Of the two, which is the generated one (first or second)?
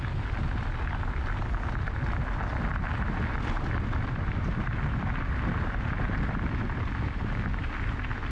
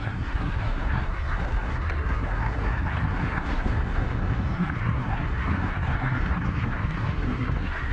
second